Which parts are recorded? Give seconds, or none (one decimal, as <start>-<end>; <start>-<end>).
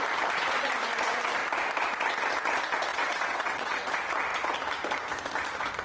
0.0-2.9; 3.9-5.8